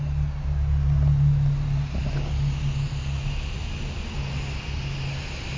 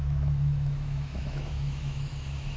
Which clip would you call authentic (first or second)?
first